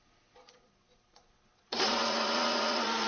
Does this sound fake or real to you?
fake